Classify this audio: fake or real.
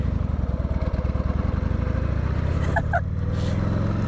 real